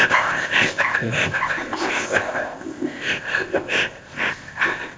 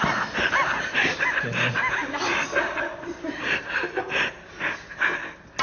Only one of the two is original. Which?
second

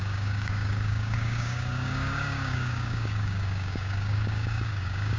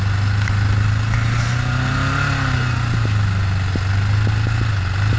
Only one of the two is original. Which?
second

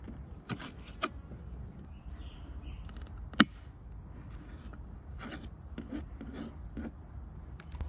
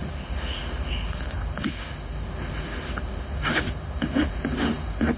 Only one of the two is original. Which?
first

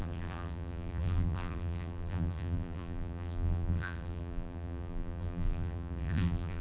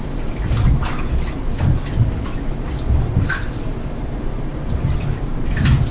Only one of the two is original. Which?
second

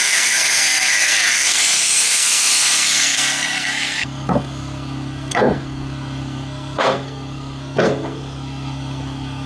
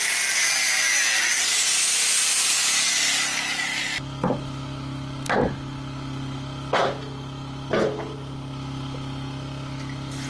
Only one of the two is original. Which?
second